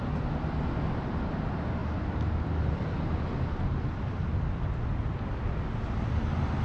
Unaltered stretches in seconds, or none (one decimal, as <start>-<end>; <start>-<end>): 0.0-6.6